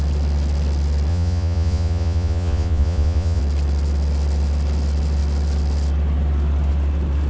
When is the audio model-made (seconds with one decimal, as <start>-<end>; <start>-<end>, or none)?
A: 1.1-3.4